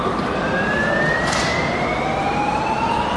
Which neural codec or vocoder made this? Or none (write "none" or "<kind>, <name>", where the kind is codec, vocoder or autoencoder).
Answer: none